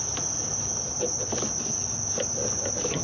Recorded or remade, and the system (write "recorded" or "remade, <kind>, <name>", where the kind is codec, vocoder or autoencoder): recorded